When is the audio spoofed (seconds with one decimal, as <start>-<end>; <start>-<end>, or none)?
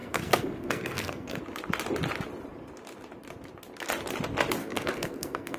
0.0-1.4; 4.6-5.6